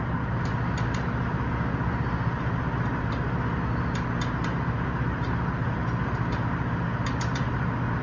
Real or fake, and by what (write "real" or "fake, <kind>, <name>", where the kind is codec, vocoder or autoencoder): real